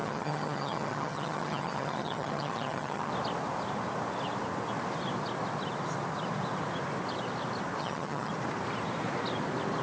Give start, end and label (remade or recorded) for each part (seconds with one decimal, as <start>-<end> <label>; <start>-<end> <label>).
0.0-3.1 remade; 3.1-7.8 recorded; 7.8-8.3 remade; 8.3-9.8 recorded